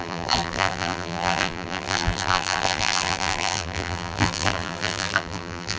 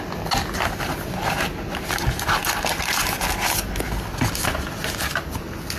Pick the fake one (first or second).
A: first